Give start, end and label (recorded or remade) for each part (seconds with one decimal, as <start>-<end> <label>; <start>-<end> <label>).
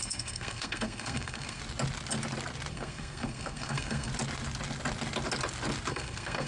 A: 0.0-1.6 remade; 1.6-2.7 recorded; 2.7-4.1 remade; 4.1-5.9 recorded; 5.9-6.5 remade